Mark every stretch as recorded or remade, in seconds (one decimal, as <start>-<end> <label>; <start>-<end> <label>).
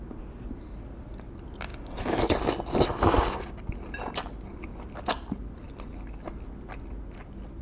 0.0-7.6 recorded